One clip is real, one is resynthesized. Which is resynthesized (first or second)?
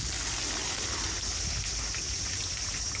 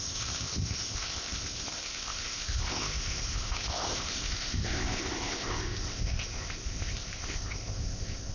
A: second